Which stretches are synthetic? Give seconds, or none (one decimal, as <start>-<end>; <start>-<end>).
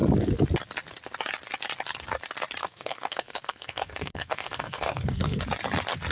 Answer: 2.6-5.4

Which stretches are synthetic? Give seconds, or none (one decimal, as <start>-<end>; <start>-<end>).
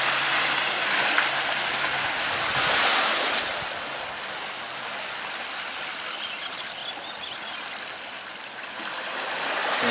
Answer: none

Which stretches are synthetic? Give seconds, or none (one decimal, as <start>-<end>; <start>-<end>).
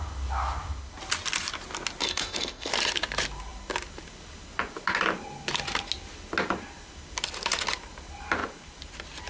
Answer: 2.0-2.7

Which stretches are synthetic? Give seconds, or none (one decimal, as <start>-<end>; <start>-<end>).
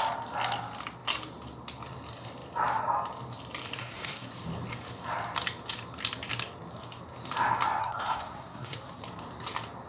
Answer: 3.8-4.3; 7.8-9.0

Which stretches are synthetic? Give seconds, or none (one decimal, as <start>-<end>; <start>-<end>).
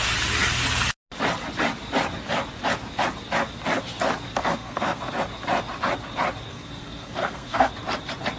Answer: 4.4-5.0; 6.5-7.7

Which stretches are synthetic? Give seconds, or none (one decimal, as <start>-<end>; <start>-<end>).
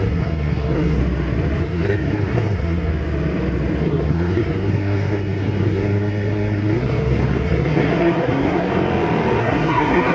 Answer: 0.0-1.0; 1.6-2.9; 3.8-8.7; 9.4-10.1